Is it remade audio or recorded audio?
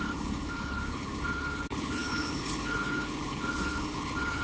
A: remade